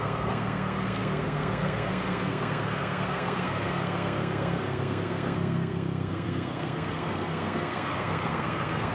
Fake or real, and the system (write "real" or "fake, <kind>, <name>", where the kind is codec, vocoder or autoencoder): fake, codec, SNAC